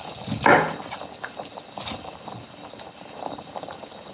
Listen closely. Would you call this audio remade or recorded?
recorded